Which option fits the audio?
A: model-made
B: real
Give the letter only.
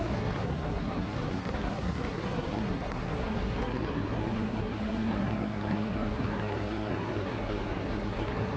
A